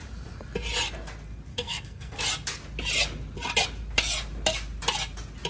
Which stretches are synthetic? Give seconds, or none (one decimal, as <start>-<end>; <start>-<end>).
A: 1.5-2.2